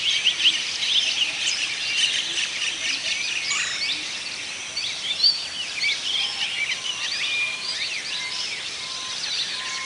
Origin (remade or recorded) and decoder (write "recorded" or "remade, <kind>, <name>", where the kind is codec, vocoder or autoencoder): remade, vocoder, BigVGAN v2